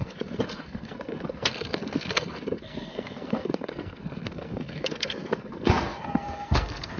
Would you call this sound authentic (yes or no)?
no